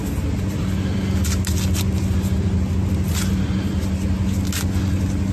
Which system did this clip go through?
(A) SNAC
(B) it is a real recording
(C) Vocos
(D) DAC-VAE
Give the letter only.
B